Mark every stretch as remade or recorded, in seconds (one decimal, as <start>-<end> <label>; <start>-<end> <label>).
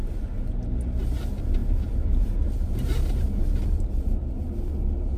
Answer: 0.0-5.2 recorded